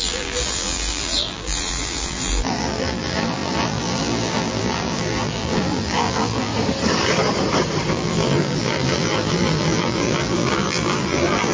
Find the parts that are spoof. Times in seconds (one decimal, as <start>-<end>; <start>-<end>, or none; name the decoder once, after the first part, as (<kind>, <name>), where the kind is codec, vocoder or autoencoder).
0.0-6.5 (vocoder, BigVGAN v2); 7.9-11.5